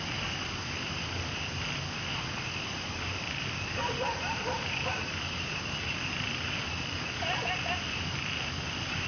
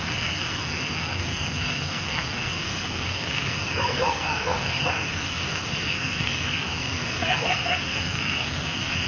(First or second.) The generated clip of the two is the second